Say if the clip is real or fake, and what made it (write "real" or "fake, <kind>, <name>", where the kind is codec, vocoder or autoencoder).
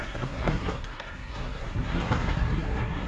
fake, codec, SNAC